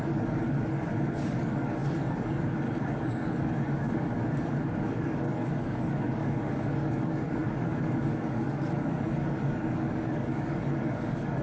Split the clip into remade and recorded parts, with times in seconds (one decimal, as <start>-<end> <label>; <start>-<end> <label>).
0.0-11.4 remade